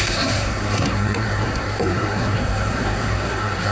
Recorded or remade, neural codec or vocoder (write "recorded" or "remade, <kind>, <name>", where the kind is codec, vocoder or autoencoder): remade, codec, SNAC